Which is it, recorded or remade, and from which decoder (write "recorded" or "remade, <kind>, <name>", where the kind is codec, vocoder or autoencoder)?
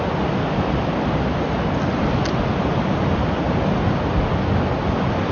recorded